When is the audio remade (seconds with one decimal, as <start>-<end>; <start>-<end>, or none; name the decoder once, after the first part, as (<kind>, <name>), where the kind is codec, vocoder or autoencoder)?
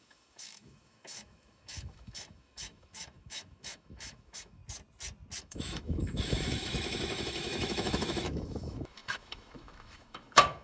0.0-4.6 (autoencoder, DAC-VAE); 5.4-10.6